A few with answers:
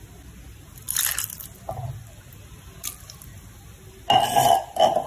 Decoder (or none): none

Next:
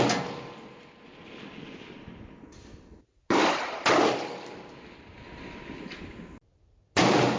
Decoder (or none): none